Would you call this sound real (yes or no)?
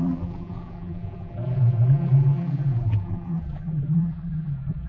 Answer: no